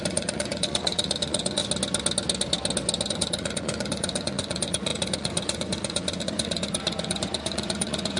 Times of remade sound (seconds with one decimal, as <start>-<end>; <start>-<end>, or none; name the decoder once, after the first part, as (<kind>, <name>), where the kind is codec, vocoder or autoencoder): 0.0-1.6 (vocoder, Vocos); 3.1-8.2